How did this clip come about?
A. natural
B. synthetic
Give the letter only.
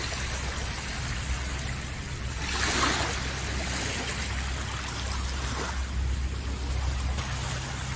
A